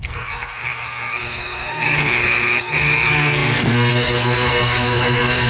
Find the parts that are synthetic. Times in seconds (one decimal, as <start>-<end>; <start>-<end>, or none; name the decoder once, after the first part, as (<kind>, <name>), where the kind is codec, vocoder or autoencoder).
0.0-5.5 (codec, SNAC)